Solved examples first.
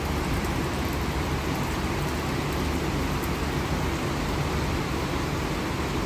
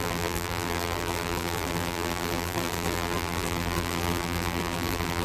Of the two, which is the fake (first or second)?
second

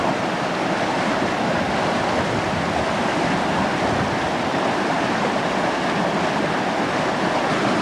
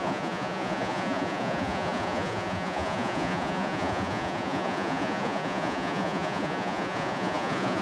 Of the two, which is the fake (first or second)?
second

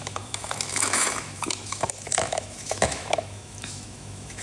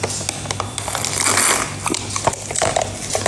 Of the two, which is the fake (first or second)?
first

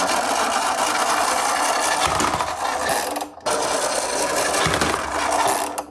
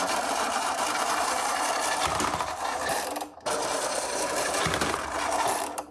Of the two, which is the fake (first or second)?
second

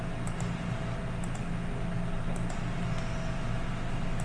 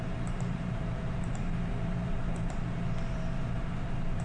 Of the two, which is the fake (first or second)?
second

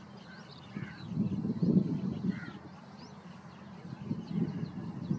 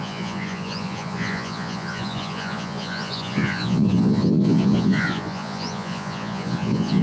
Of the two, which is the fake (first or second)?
second